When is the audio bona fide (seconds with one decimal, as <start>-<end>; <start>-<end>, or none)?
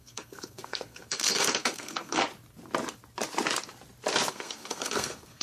2.2-4.3